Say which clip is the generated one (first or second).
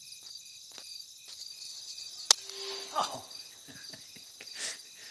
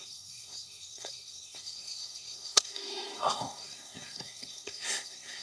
second